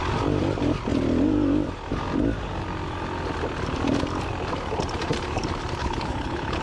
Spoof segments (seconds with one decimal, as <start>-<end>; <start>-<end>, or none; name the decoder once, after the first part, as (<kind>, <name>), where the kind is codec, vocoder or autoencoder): 5.8-6.6 (codec, HILCodec)